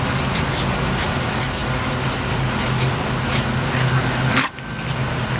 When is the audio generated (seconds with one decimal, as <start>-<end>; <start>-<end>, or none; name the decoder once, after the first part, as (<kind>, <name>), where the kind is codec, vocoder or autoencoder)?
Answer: none